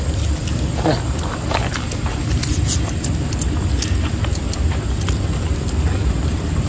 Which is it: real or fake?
real